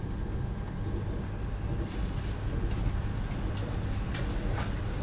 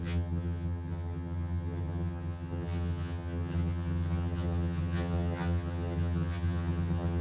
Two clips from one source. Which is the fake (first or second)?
second